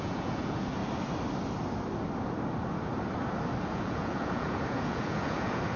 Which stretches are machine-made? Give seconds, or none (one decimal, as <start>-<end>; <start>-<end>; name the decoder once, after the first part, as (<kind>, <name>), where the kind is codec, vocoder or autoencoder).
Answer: 0.0-0.8 (vocoder, Vocos); 3.6-5.8